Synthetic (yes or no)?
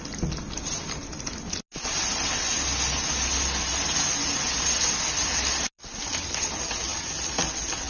no